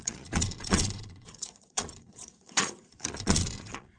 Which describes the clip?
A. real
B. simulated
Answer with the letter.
B